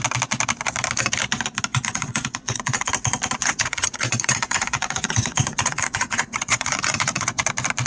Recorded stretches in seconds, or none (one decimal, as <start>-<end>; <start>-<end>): 0.0-1.7; 2.9-3.4; 7.4-7.9